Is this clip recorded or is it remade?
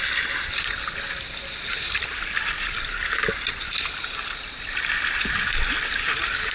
recorded